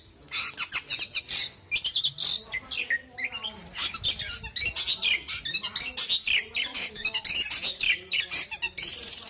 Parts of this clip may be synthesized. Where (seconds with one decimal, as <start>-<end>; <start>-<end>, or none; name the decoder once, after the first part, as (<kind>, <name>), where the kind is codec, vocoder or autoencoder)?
6.7-7.2 (codec, DAC)